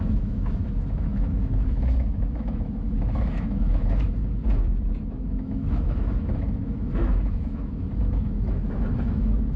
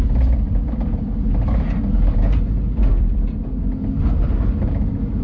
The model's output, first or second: first